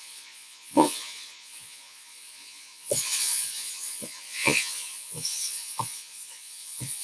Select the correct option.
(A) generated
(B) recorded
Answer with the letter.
A